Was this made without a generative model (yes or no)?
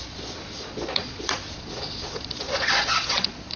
no